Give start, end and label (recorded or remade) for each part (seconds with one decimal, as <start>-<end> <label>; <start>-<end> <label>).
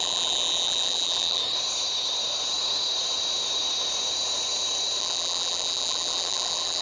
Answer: 0.0-1.4 remade; 1.4-5.0 recorded; 5.0-6.8 remade